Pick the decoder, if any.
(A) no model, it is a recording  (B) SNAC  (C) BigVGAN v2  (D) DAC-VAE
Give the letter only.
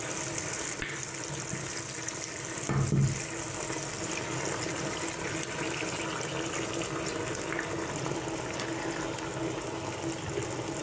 A